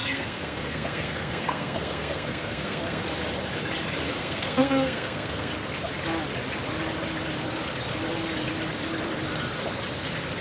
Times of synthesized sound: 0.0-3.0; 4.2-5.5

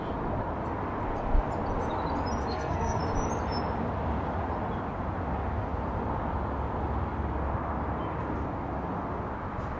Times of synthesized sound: 2.5-3.0

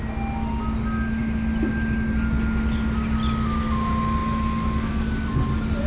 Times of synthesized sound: none

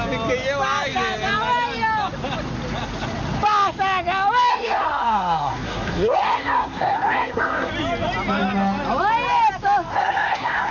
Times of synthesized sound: 4.5-7.7; 9.9-10.7

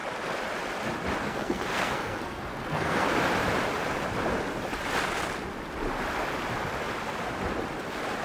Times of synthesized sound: 1.2-3.1

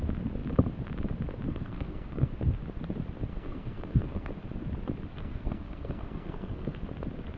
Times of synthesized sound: 1.5-2.3; 3.3-4.3; 5.1-6.8